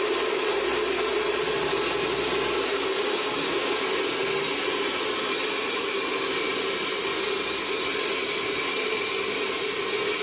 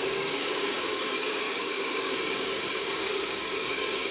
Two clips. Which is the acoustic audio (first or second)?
first